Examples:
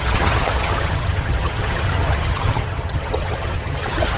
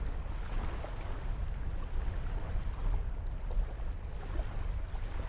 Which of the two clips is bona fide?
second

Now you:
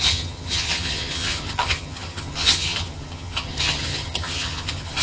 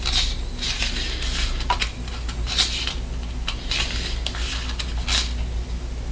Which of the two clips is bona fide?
second